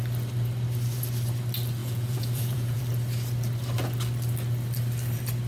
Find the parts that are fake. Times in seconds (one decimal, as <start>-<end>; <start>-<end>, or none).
1.8-2.8